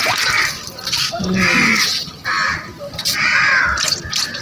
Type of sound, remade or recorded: remade